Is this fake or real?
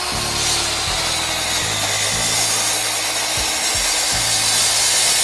real